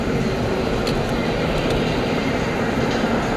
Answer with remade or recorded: recorded